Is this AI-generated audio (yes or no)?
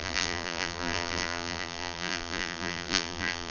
yes